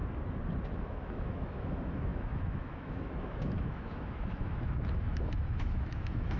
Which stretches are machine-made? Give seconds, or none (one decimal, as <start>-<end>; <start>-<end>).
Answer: 0.7-6.4